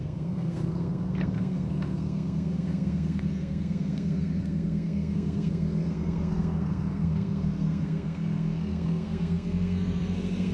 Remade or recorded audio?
remade